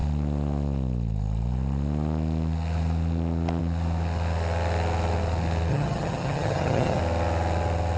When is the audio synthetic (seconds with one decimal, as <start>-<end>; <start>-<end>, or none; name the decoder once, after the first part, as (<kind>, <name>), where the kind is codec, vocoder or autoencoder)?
5.7-7.0 (vocoder, HiFi-GAN)